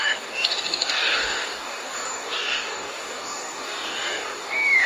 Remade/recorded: remade